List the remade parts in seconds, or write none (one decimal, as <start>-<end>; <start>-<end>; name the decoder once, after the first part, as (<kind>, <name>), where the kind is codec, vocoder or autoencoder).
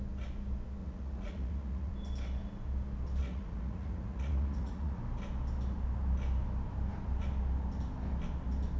0.8-1.9 (vocoder, Vocos); 3.2-5.0